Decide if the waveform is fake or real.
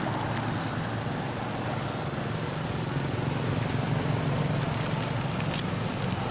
real